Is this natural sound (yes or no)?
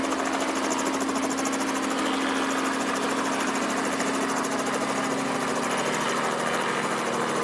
yes